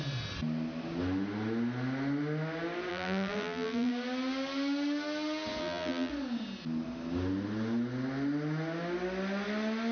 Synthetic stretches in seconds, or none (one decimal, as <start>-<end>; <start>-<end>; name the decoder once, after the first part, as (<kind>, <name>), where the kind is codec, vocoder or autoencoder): 2.9-3.9 (vocoder, BigVGAN v2); 5.6-6.1